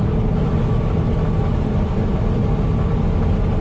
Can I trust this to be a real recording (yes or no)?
yes